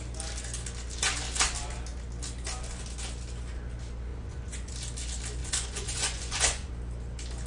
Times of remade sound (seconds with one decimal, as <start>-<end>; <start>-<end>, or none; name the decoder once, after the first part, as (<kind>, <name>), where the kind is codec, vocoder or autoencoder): 4.1-4.7 (vocoder, Vocos); 5.4-6.7